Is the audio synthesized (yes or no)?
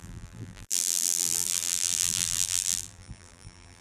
yes